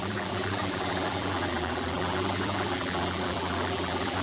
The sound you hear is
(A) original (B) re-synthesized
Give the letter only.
B